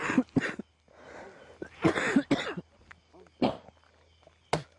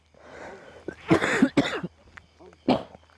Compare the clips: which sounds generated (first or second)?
second